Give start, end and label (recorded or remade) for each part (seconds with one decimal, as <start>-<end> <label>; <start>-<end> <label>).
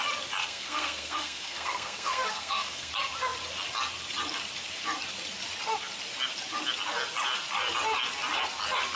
0.0-0.4 recorded; 0.4-2.9 remade; 2.9-9.0 recorded